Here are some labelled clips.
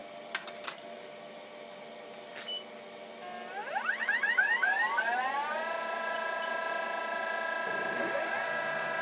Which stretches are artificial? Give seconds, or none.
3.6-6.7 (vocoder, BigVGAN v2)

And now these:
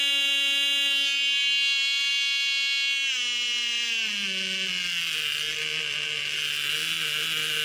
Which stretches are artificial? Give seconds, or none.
none

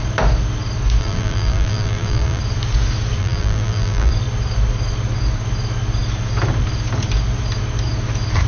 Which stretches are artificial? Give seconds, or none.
1.0-2.4 (vocoder, BigVGAN v2); 3.2-4.1

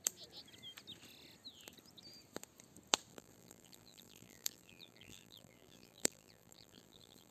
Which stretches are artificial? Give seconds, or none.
3.1-7.3 (vocoder, BigVGAN v2)

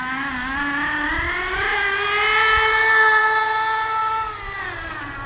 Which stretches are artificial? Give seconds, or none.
none

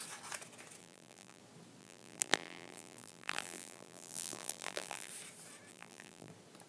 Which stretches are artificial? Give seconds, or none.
0.8-1.4 (vocoder, BigVGAN v2); 1.8-5.1; 5.7-6.3

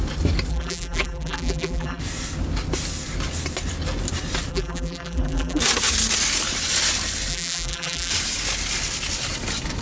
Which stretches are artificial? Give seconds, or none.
0.5-2.0 (vocoder, BigVGAN v2); 4.5-5.6; 7.3-8.1

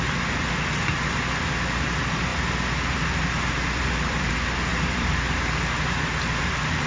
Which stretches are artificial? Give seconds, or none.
2.3-4.3 (vocoder, BigVGAN v2); 4.7-6.4